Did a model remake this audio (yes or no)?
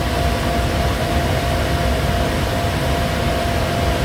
no